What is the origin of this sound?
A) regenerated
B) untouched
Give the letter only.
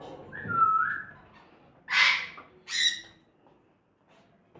B